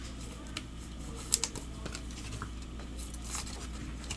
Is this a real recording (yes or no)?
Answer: yes